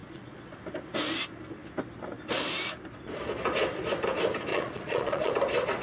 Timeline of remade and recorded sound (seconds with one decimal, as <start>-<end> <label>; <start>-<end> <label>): 0.0-0.6 remade; 0.6-4.5 recorded; 4.5-5.3 remade; 5.3-5.8 recorded